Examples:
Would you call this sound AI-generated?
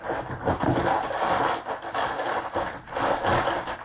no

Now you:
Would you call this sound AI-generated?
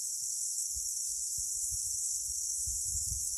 yes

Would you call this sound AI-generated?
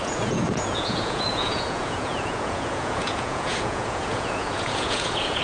yes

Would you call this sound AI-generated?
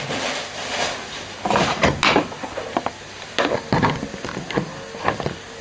no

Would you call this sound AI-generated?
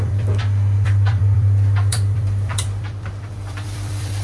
yes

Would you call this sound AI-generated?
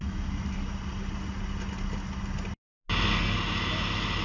no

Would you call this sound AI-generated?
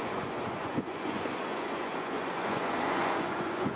yes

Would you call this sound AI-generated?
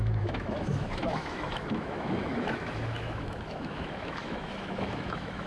yes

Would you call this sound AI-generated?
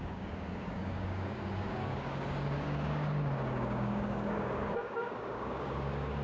yes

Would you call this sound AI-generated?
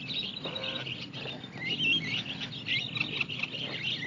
no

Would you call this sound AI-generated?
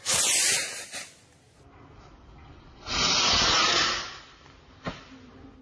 no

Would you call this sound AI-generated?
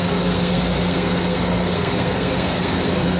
yes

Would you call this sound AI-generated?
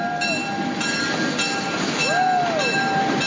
no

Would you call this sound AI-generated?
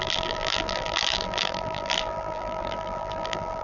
yes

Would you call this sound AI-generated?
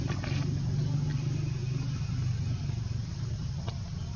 no